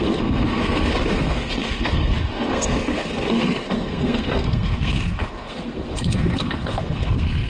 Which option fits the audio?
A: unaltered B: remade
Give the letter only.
B